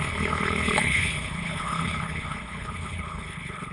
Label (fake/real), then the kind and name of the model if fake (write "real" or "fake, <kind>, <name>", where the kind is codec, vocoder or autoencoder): fake, codec, HILCodec